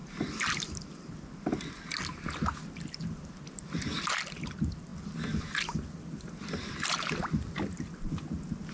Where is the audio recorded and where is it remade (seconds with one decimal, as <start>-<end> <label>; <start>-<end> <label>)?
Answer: 0.0-8.7 recorded